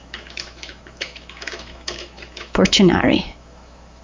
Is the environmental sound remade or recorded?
remade